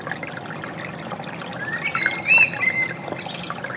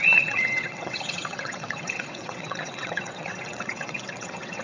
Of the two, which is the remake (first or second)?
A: second